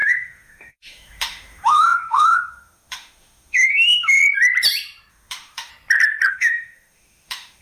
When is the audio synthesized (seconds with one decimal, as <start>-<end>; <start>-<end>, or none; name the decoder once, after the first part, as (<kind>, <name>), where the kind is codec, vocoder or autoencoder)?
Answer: 0.0-4.2 (autoencoder, DAC-VAE); 5.1-5.7; 6.3-7.6